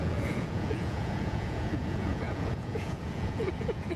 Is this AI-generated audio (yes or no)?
yes